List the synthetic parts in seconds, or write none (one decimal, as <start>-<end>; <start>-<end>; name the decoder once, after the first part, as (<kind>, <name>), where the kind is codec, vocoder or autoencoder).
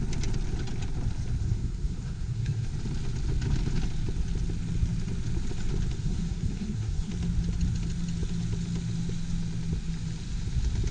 1.4-2.7 (codec, SNAC); 6.0-7.1